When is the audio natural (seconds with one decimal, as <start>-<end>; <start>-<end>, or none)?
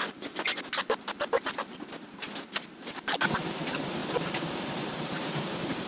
0.0-5.9